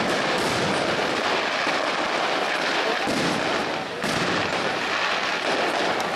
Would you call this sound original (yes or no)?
yes